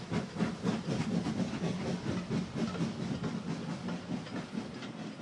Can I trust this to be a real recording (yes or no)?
yes